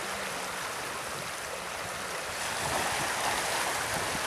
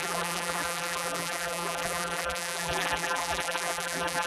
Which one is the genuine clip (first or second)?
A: first